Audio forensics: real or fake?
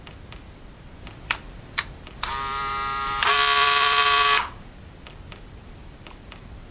fake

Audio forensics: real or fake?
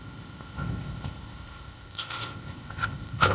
fake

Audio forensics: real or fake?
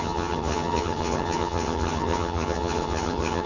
fake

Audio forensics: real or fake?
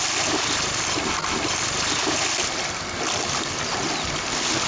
real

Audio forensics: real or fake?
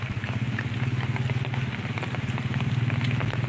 real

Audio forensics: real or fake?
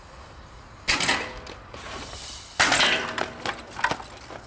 real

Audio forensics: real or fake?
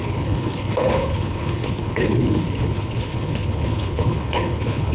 fake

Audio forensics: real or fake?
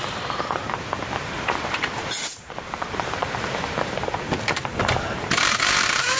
fake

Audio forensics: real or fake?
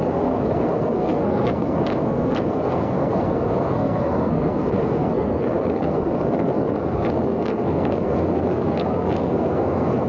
fake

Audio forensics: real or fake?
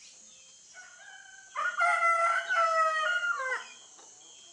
real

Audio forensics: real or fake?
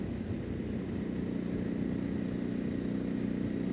real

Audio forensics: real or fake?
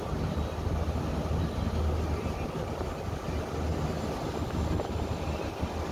real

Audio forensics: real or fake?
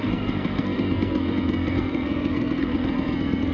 fake